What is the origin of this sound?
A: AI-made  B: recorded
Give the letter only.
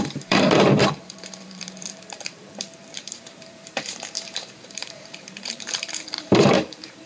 A